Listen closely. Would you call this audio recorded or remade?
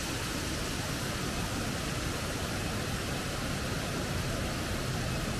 recorded